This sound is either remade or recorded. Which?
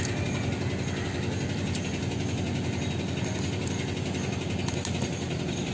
recorded